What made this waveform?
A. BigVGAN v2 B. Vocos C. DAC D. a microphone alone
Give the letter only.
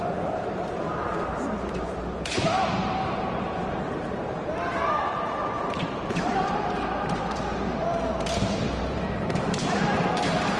A